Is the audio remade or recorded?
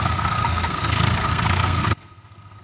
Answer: remade